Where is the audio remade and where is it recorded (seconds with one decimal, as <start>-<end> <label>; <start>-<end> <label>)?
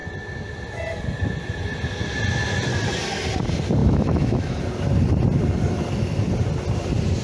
0.0-3.8 recorded; 3.8-4.6 remade; 4.6-7.2 recorded